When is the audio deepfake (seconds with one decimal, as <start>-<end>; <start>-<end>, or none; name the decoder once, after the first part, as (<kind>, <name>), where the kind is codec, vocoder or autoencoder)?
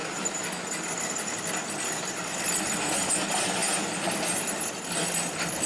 none